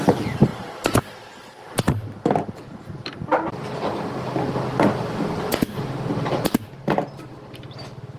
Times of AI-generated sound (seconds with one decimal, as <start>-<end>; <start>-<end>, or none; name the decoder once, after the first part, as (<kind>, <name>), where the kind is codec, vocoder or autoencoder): none